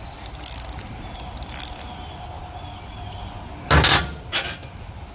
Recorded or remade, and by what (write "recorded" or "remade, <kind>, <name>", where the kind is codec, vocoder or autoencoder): recorded